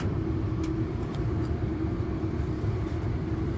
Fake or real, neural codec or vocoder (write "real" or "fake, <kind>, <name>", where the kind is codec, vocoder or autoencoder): fake, vocoder, BigVGAN v2